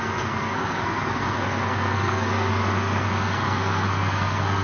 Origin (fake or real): fake